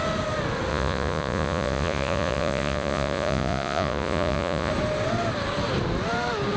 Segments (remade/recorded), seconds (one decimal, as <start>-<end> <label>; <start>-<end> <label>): 0.0-0.7 recorded; 0.7-4.7 remade; 4.7-6.6 recorded